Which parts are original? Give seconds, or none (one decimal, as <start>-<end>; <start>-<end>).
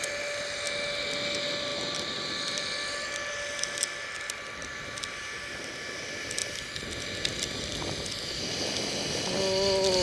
0.0-1.7; 3.3-4.6; 5.7-6.4; 8.4-10.0